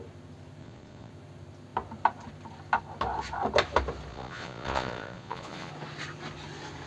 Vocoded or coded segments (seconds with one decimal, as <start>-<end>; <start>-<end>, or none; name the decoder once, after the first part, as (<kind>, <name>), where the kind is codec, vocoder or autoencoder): 0.6-1.1 (vocoder, Vocos); 4.1-5.7